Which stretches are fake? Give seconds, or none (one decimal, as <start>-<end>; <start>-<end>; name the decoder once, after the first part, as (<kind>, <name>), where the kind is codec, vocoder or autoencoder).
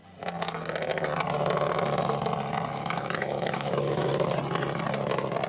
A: 2.7-4.1 (autoencoder, DAC-VAE)